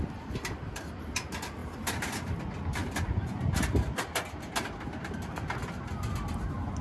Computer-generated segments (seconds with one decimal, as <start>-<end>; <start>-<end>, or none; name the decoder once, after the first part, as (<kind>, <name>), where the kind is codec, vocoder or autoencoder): none